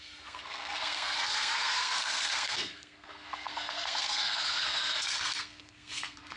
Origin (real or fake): fake